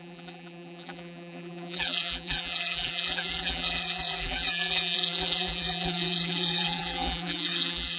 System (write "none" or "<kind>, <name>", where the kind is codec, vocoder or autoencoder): vocoder, BigVGAN v2